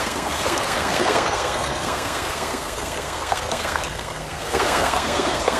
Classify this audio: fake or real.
fake